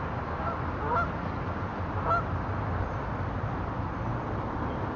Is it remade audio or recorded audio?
recorded